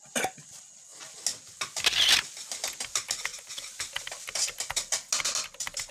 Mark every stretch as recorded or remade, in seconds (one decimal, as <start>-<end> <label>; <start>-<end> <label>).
0.0-5.9 recorded